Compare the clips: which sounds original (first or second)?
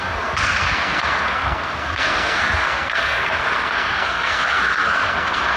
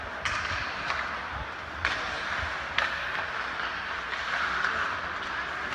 second